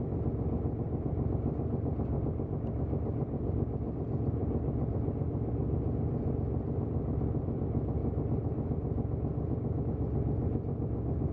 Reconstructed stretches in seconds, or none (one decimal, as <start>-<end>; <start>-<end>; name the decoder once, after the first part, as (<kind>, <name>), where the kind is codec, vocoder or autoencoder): none